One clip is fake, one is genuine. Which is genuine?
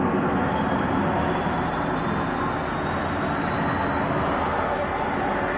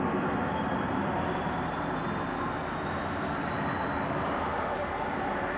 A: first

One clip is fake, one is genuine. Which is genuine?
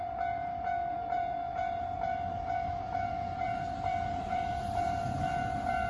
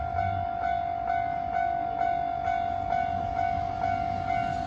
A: second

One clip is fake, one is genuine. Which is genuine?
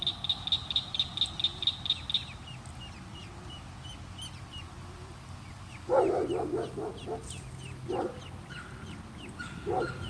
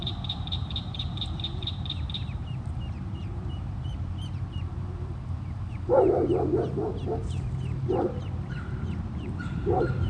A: first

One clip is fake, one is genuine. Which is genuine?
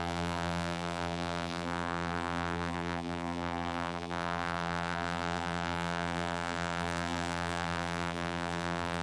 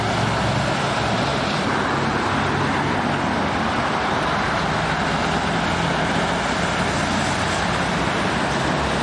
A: second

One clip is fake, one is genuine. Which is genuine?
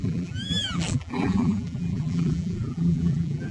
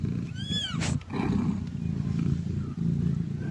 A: second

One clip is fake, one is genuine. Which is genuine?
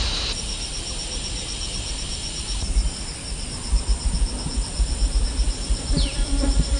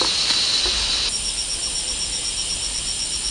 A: second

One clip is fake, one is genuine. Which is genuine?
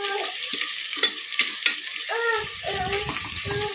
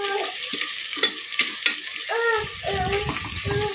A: second